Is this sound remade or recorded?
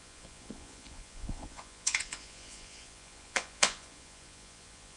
remade